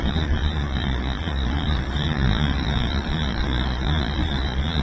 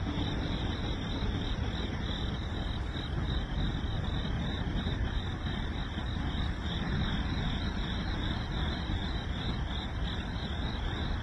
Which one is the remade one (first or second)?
first